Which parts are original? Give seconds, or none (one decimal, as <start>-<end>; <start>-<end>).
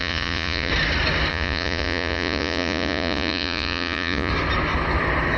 0.7-1.3; 4.3-5.4